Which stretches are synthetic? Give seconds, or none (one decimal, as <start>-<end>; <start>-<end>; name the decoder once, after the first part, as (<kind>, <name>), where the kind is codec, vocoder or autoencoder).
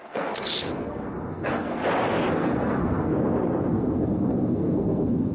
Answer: 0.0-1.8 (codec, SNAC); 2.3-3.1; 3.7-5.3